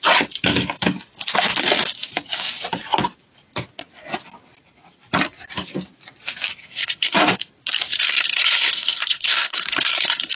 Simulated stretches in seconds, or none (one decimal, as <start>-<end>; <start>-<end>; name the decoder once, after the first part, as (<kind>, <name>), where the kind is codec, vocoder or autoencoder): 6.6-7.3 (codec, SNAC); 7.9-10.3